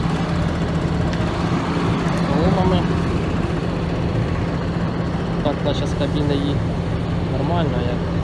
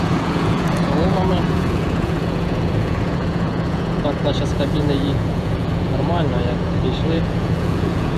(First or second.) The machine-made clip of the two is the second